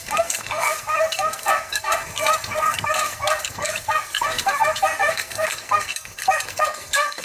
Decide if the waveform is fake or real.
fake